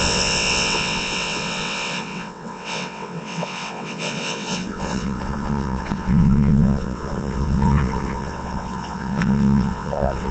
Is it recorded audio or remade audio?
remade